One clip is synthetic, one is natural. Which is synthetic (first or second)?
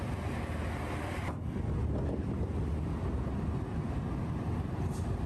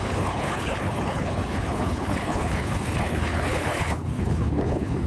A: second